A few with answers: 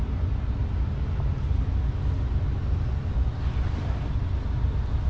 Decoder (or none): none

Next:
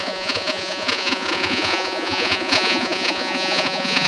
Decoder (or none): vocoder, Vocos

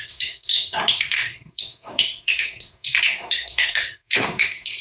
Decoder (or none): codec, SNAC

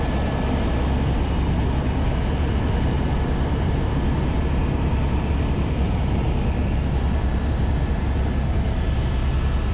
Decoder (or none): none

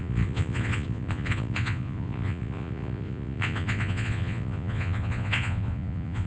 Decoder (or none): vocoder, Vocos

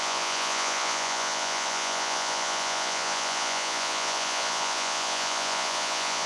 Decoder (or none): vocoder, Vocos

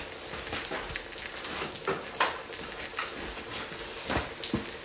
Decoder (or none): none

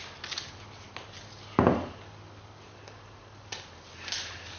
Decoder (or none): none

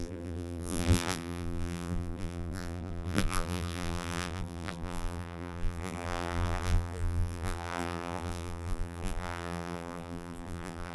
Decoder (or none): vocoder, BigVGAN v2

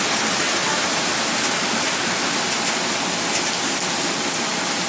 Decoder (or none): none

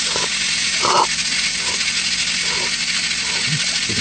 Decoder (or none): none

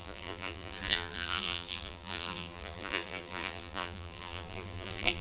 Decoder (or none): vocoder, BigVGAN v2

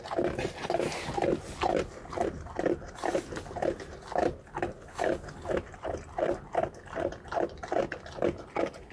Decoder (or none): none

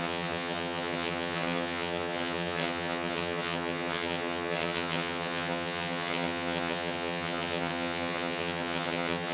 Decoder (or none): vocoder, HiFi-GAN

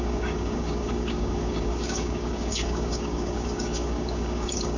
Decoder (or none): codec, DAC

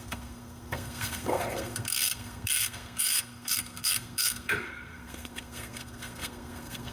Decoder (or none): codec, SNAC